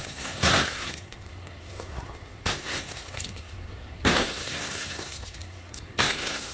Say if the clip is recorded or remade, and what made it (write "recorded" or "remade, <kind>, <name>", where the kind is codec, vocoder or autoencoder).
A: remade, codec, SNAC